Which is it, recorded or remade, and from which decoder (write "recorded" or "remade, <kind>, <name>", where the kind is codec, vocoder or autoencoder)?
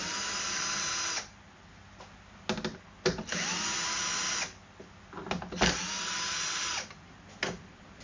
recorded